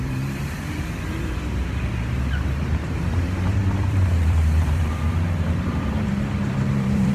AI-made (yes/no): yes